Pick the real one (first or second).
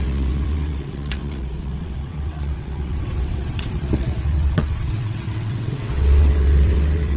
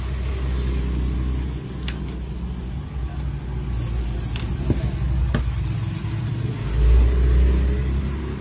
second